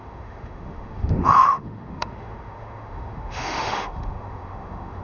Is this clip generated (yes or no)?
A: yes